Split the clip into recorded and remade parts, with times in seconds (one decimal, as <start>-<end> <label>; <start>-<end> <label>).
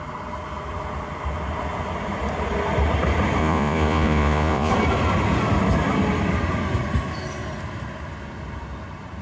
0.0-3.4 recorded; 3.4-4.7 remade; 4.7-9.2 recorded